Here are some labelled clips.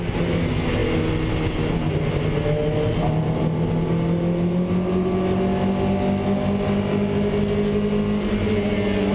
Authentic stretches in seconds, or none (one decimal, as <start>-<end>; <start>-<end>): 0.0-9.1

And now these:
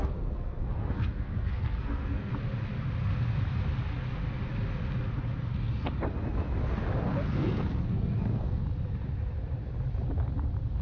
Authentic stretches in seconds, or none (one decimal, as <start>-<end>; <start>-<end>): 2.3-7.3; 8.6-10.8

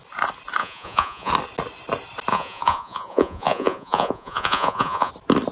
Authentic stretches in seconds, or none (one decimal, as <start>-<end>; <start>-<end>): 0.0-0.6; 1.3-2.3; 5.1-5.5

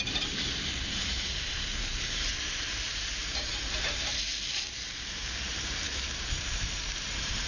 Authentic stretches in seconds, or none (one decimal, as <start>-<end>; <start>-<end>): 4.3-5.1